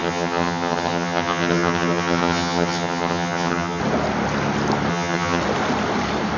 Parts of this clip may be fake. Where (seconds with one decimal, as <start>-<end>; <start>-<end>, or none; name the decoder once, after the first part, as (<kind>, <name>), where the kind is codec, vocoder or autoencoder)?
0.0-3.8 (vocoder, HiFi-GAN); 4.9-5.4